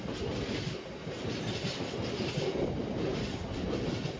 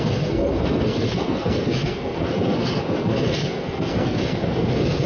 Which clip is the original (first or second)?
first